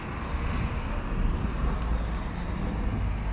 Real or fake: real